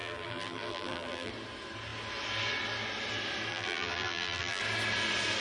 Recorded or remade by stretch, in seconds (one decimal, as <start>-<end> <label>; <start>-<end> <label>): 0.0-1.3 remade; 1.3-3.5 recorded; 3.5-4.6 remade; 4.6-5.4 recorded